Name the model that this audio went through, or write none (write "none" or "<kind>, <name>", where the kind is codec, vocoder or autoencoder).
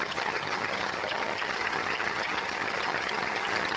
vocoder, HiFi-GAN